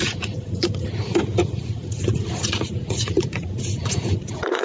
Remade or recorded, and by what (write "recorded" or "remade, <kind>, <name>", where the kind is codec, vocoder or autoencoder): remade, vocoder, Vocos